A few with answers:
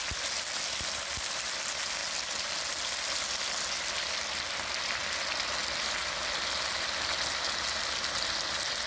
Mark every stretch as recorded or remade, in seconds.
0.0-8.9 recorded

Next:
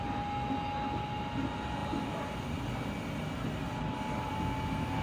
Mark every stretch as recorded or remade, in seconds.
0.0-5.0 recorded

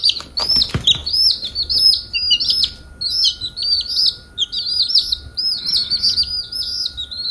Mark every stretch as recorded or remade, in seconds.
0.0-7.3 recorded

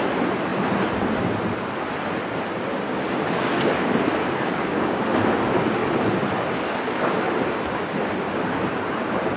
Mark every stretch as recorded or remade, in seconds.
0.0-4.2 recorded; 4.2-5.0 remade; 5.0-9.4 recorded

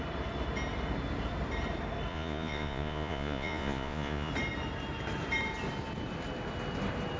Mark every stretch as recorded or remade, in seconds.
0.0-2.1 recorded; 2.1-4.3 remade; 4.3-7.2 recorded

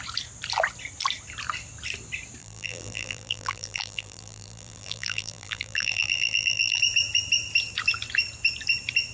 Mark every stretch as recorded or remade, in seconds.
0.0-2.4 recorded; 2.4-6.8 remade; 6.8-9.1 recorded

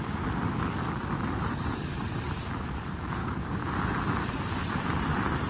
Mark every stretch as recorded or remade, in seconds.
0.0-3.2 recorded; 3.2-3.8 remade; 3.8-5.5 recorded